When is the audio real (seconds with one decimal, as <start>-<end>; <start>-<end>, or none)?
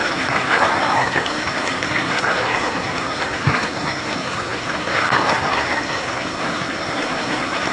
none